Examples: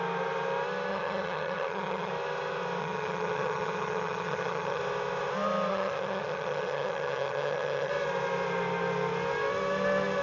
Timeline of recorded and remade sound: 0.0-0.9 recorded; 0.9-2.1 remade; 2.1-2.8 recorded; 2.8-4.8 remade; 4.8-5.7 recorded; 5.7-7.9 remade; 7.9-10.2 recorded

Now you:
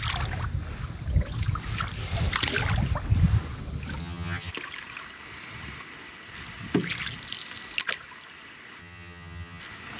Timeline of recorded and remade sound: 0.0-4.0 recorded; 4.0-4.5 remade; 4.5-8.8 recorded; 8.8-9.6 remade; 9.6-10.0 recorded

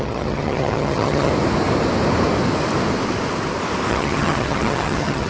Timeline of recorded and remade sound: 0.0-1.3 remade; 1.3-3.9 recorded; 3.9-5.3 remade

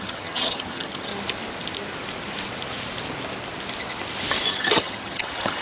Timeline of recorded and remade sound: 0.0-1.1 remade; 1.1-4.5 recorded; 4.5-5.6 remade

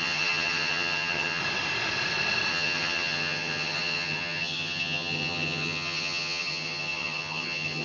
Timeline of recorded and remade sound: 0.0-1.4 remade; 1.4-2.5 recorded; 2.5-7.8 remade

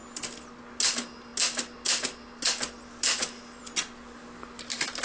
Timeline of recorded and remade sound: 0.0-5.0 recorded

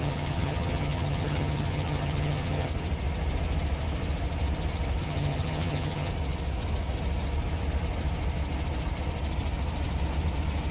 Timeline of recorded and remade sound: 0.0-2.7 remade; 2.7-5.0 recorded; 5.0-6.1 remade; 6.1-10.7 recorded